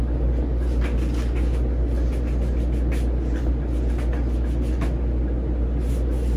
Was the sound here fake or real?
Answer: real